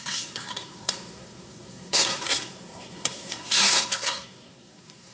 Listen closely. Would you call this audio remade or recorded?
remade